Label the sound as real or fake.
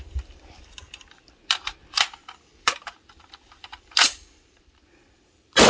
fake